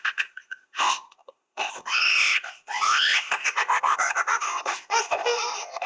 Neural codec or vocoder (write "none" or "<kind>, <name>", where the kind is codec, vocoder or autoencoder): codec, ZipCodec